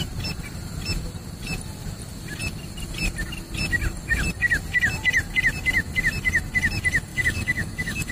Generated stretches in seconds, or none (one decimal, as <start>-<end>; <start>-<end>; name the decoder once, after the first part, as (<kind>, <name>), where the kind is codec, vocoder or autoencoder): 7.1-8.1 (codec, DAC)